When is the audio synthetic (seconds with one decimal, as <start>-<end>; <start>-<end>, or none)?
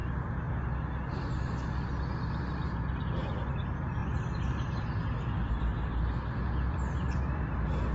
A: none